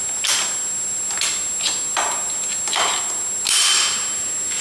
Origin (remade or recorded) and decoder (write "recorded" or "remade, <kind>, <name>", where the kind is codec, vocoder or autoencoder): recorded